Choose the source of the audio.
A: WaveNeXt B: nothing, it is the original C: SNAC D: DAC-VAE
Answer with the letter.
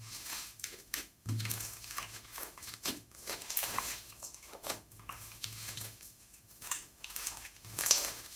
D